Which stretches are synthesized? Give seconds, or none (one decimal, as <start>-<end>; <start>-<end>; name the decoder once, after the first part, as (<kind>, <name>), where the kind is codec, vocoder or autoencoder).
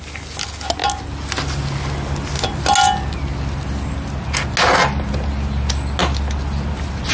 none